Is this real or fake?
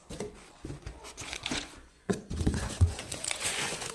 fake